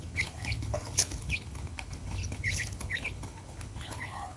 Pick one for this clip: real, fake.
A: fake